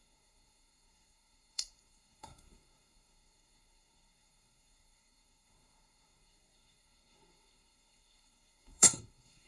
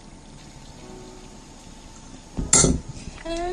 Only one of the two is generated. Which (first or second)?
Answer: first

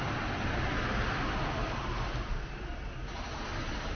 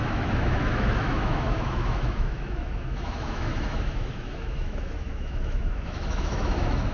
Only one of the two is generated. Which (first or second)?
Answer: second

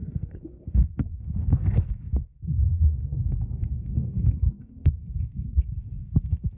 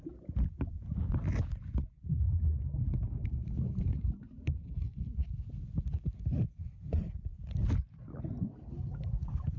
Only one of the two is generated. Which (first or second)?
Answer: first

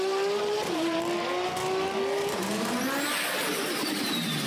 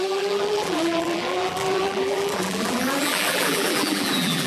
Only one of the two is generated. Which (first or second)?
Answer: second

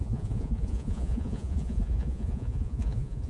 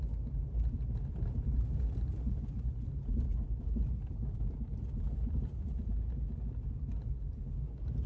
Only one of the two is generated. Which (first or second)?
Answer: first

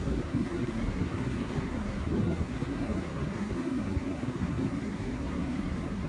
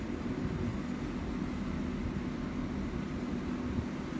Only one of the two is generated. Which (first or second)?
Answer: first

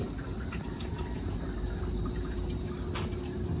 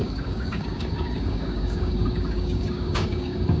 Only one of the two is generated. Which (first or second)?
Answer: second